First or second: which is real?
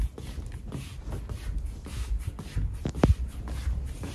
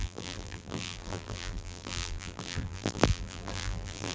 first